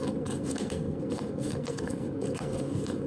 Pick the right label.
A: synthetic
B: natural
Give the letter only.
A